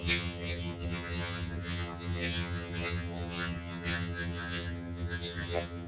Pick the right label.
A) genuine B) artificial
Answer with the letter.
B